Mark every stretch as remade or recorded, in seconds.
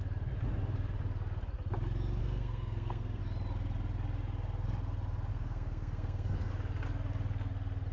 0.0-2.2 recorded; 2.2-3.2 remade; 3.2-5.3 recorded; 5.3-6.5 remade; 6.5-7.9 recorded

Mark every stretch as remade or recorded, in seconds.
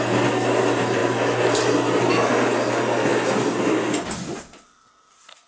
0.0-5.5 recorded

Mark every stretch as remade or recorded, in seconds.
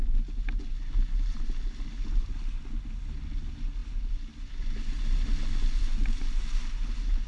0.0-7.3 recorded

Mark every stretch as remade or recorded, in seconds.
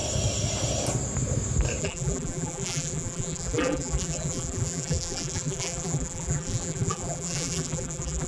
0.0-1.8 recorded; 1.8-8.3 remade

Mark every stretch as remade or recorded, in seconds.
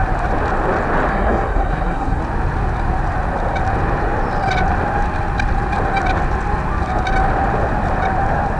0.0-1.1 recorded; 1.1-2.2 remade; 2.2-8.6 recorded